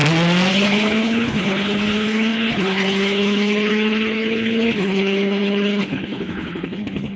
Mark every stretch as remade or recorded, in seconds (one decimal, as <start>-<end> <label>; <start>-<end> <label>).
0.0-0.5 recorded; 0.5-7.2 remade